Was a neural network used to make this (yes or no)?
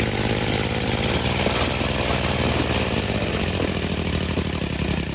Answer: no